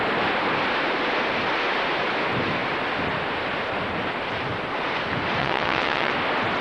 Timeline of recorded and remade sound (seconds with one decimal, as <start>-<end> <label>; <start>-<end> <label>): 0.0-5.4 recorded; 5.4-6.1 remade; 6.1-6.6 recorded